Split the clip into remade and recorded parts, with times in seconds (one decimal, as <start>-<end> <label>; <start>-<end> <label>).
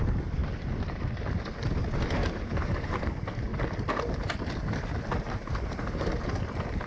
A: 0.0-3.5 remade; 3.5-5.3 recorded; 5.3-6.9 remade